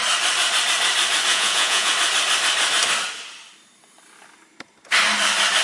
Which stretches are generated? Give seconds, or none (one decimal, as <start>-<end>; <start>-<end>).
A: 1.3-1.9